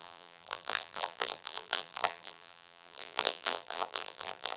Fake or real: fake